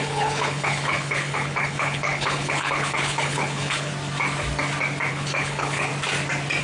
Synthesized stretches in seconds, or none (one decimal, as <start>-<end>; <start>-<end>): 0.0-3.9; 5.1-5.9